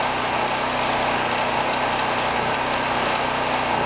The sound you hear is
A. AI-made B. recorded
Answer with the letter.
B